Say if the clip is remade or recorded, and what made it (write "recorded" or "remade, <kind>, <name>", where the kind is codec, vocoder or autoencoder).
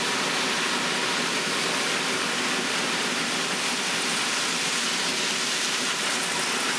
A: recorded